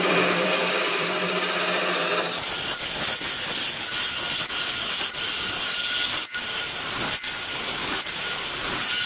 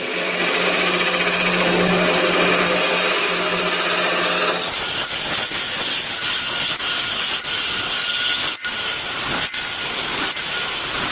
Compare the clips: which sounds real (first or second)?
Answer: second